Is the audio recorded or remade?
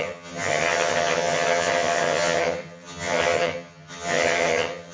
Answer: remade